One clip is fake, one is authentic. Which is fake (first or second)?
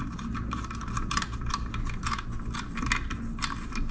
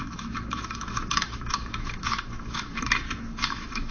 second